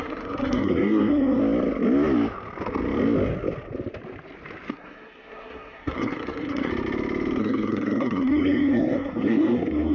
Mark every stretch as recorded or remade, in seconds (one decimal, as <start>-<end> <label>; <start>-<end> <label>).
0.0-1.4 remade; 1.4-4.7 recorded; 4.7-6.7 remade; 6.7-7.4 recorded; 7.4-9.9 remade